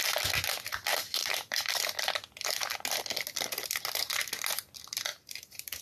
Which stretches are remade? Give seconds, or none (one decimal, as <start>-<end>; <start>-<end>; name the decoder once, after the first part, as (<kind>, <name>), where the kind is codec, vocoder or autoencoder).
1.2-1.8 (vocoder, BigVGAN v2); 5.1-5.8